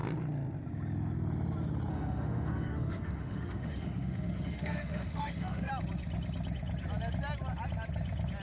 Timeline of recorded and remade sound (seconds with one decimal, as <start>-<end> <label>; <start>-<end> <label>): 0.0-1.9 recorded; 1.9-5.7 remade; 5.7-8.4 recorded